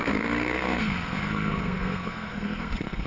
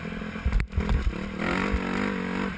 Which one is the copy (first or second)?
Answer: first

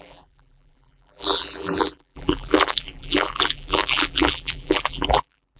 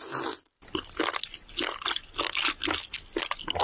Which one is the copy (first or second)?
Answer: first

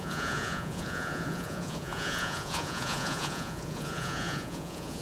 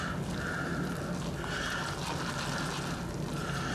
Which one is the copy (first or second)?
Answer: first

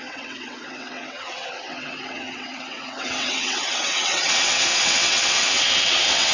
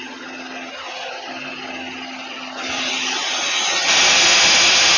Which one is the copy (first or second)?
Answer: first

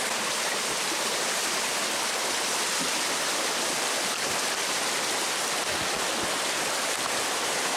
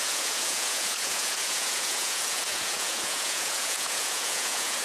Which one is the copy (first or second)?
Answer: second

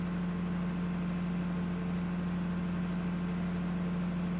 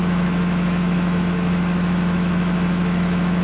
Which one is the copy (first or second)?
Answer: second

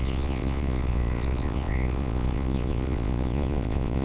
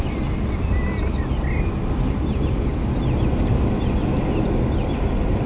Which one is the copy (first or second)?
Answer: first